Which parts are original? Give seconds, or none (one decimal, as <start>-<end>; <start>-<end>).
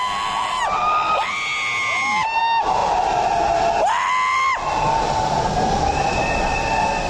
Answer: 0.0-7.1